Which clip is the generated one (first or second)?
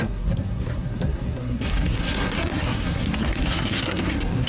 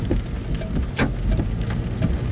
first